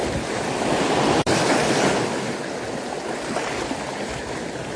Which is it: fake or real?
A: real